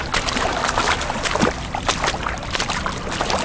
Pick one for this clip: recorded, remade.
recorded